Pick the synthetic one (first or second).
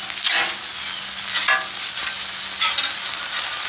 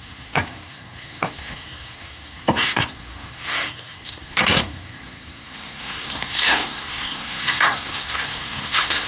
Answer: second